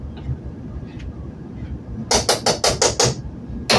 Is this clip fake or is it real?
real